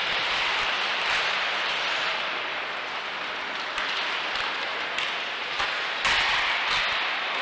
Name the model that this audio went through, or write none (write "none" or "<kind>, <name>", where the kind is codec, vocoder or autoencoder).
none